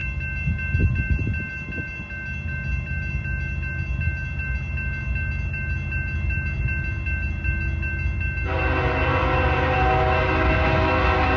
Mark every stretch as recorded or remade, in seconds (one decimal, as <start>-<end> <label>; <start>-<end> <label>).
0.0-11.4 recorded